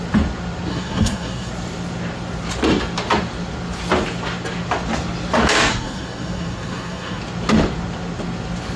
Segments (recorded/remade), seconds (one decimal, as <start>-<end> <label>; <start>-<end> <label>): 0.0-0.7 recorded; 0.7-1.5 remade; 1.5-5.7 recorded; 5.7-7.2 remade; 7.2-8.8 recorded